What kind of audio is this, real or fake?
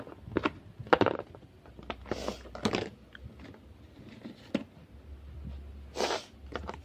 real